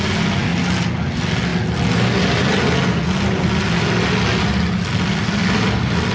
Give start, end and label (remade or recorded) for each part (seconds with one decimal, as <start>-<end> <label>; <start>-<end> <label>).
0.0-6.1 recorded